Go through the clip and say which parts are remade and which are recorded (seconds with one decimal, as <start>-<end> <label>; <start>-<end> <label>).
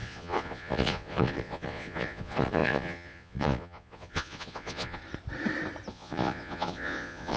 0.0-5.0 remade; 5.0-5.9 recorded; 5.9-7.4 remade